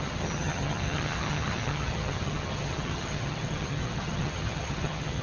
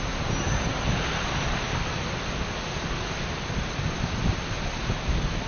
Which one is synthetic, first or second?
first